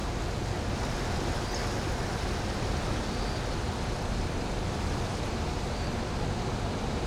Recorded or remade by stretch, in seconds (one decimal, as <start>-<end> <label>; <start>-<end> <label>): 0.0-7.1 recorded